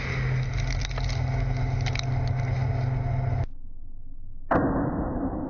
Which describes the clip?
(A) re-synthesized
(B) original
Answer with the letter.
B